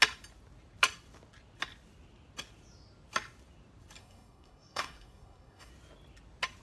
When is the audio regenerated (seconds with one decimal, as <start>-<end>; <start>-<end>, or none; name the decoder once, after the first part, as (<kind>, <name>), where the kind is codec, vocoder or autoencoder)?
4.0-5.7 (codec, SNAC)